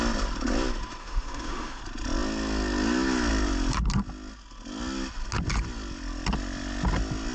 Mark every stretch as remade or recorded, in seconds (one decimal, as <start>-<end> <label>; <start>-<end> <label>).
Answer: 0.0-1.0 recorded; 1.0-1.8 remade; 1.8-7.3 recorded